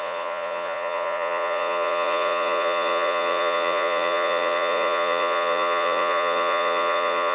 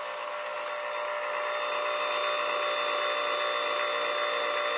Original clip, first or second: second